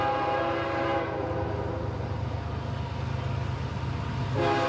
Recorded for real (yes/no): yes